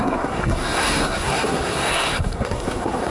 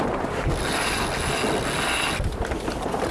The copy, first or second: first